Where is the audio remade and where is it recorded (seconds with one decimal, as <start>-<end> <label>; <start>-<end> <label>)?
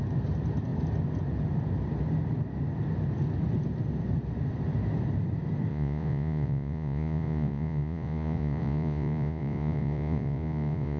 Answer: 0.0-5.7 recorded; 5.7-11.0 remade